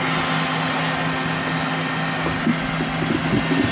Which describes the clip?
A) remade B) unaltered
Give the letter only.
B